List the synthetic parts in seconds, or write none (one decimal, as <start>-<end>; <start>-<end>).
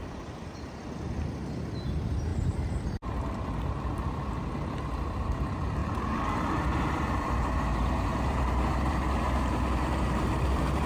0.0-0.8; 5.8-10.9